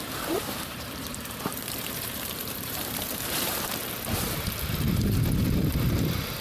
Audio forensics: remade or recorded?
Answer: remade